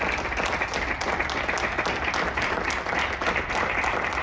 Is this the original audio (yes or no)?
yes